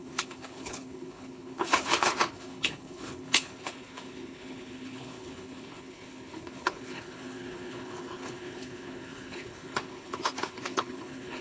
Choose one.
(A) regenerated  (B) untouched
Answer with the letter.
A